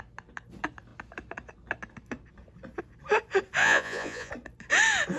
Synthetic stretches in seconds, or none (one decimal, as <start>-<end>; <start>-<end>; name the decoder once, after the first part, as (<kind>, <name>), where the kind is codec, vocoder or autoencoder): 3.6-4.3 (vocoder, Vocos)